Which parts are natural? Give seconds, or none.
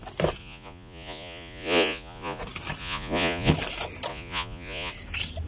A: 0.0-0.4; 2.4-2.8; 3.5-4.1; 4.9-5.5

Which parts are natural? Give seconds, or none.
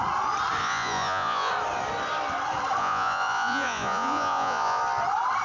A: 0.0-0.6; 1.5-2.8; 4.8-5.4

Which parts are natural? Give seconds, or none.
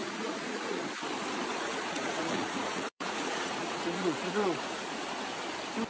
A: 0.8-1.5; 5.0-5.9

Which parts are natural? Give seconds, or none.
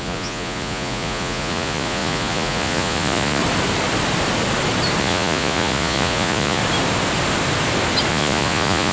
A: 3.4-5.0; 6.6-8.1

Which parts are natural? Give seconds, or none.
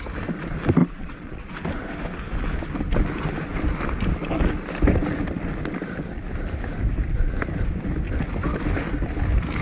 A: 0.0-0.8; 1.5-9.6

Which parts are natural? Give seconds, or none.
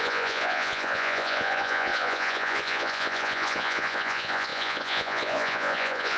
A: none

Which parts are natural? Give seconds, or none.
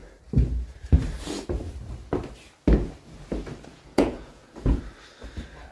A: 0.0-3.7; 4.8-5.7